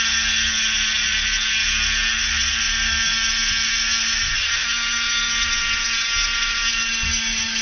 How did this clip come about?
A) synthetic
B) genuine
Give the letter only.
B